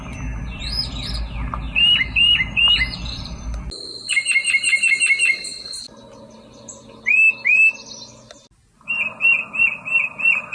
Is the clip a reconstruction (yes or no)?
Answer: no